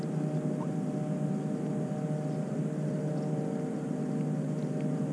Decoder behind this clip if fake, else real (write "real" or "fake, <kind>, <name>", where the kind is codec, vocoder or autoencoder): real